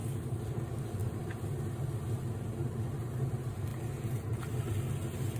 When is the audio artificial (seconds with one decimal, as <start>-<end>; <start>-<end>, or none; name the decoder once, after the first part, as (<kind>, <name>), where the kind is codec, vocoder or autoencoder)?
0.0-0.5 (vocoder, BigVGAN v2)